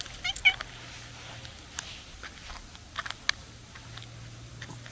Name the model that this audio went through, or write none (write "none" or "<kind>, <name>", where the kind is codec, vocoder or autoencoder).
none